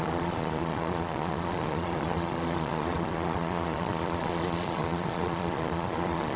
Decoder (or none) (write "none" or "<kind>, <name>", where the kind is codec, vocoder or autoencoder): vocoder, Vocos